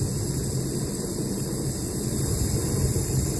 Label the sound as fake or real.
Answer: real